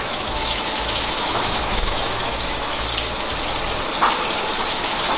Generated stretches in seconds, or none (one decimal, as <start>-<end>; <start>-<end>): 0.0-2.9; 4.7-5.2